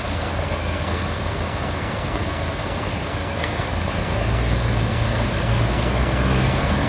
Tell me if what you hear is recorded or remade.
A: remade